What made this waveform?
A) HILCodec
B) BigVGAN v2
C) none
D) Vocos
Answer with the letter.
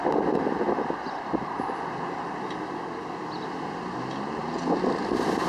B